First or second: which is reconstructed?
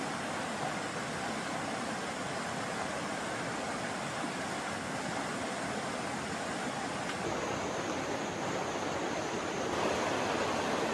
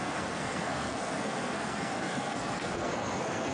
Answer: second